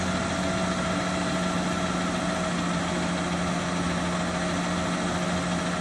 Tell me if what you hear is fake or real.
real